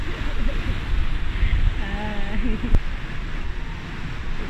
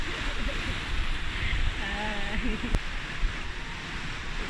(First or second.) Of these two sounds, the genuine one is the first